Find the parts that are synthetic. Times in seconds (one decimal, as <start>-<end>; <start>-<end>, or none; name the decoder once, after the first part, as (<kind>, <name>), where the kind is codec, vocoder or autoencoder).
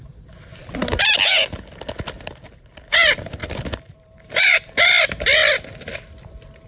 3.4-4.7 (vocoder, BigVGAN v2)